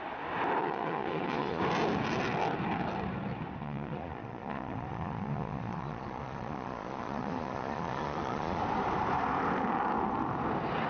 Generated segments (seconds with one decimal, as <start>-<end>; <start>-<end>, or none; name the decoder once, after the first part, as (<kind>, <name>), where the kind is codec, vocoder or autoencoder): 0.6-1.6 (vocoder, Vocos); 3.6-8.6